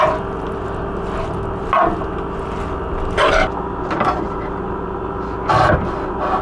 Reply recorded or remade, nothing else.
recorded